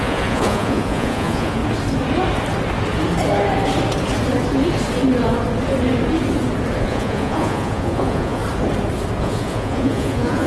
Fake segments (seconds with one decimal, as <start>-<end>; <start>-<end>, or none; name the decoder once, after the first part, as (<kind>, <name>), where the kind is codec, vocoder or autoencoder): 0.0-1.6 (vocoder, Vocos); 6.8-8.4; 9.2-10.5